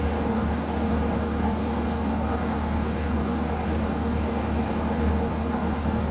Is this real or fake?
fake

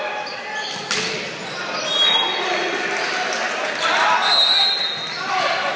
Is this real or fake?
real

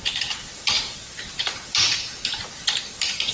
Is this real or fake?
fake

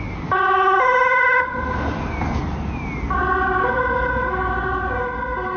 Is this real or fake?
real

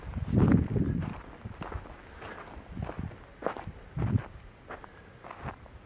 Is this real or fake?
real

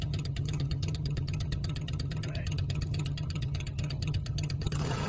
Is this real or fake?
fake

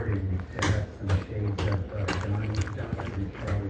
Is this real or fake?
real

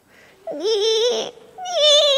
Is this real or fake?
real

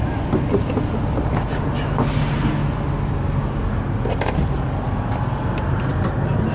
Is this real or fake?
real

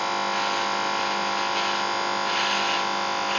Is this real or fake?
real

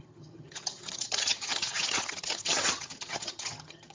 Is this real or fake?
fake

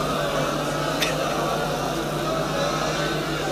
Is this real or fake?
real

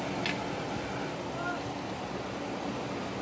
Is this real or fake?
real